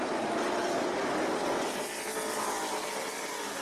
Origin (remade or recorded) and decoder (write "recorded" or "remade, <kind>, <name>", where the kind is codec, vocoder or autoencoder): recorded